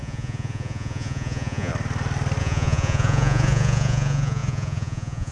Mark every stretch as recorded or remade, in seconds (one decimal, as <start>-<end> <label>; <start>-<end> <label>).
0.0-1.7 remade; 1.7-2.4 recorded; 2.4-5.3 remade